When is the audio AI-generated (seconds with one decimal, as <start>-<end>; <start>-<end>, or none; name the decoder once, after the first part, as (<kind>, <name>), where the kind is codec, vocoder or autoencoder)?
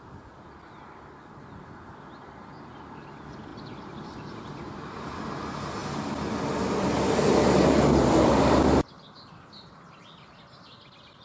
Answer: none